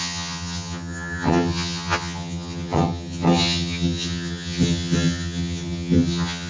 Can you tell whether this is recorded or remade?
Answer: remade